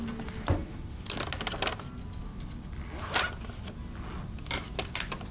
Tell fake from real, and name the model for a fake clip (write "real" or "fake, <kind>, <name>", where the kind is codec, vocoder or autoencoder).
real